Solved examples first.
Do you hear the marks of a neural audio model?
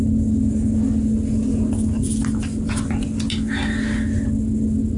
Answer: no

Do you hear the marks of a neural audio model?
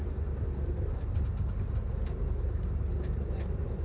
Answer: no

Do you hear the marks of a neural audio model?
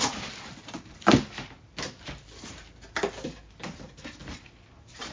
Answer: no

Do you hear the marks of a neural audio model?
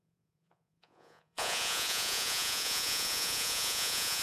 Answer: yes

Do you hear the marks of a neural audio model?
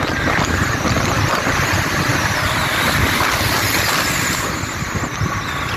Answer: no